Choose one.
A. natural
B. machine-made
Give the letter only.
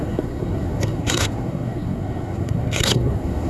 B